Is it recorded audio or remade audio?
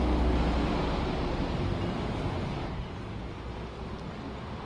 recorded